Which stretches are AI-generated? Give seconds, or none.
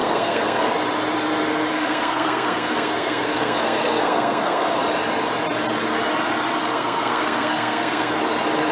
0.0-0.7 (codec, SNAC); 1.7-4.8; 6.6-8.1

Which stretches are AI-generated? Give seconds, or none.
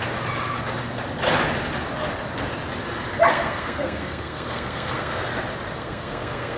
3.3-5.1 (codec, SNAC); 5.8-6.6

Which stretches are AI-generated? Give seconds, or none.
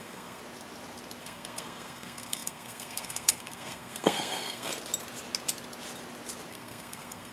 0.0-0.4 (codec, SNAC); 1.2-4.7; 6.5-7.3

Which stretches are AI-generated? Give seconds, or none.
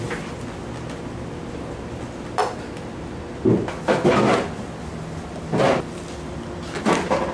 none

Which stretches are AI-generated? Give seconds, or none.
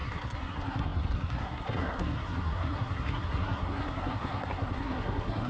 0.0-5.5 (codec, SNAC)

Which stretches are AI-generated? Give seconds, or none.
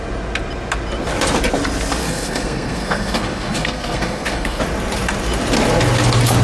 2.0-4.6 (codec, SNAC)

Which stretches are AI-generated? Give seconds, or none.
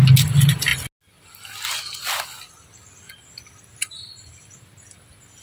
none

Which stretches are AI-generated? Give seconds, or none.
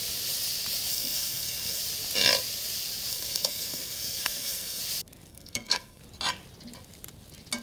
0.9-1.8 (codec, SNAC); 3.1-4.8; 5.3-6.0